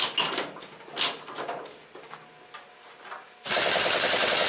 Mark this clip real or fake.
real